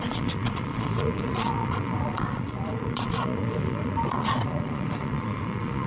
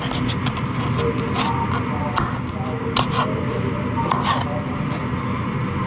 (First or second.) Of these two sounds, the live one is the second